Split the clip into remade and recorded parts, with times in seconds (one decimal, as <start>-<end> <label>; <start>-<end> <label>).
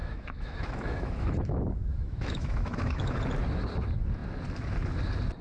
0.0-3.2 remade; 3.2-5.4 recorded